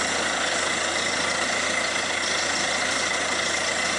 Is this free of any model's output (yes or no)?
yes